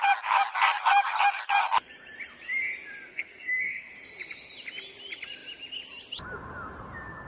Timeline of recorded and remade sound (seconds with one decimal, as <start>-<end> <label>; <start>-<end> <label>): 0.0-3.1 recorded; 3.1-3.9 remade; 3.9-7.3 recorded